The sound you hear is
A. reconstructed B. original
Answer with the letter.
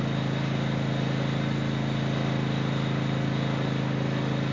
B